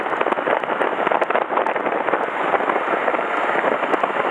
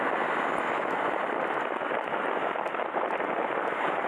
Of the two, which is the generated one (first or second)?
first